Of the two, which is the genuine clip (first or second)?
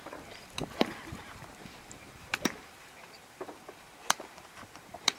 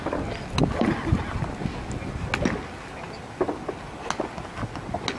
second